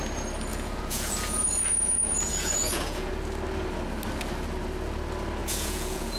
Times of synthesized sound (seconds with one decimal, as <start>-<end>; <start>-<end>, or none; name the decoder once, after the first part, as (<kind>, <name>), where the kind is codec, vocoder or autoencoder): 0.5-3.1 (vocoder, Vocos); 5.4-6.2